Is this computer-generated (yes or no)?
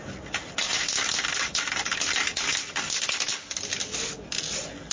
no